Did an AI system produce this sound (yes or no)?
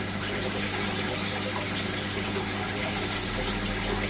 no